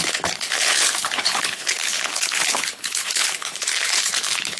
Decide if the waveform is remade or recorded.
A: remade